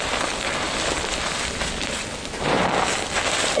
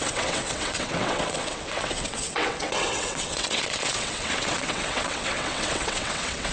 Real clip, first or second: first